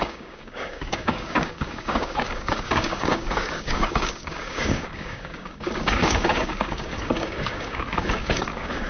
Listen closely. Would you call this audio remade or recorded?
remade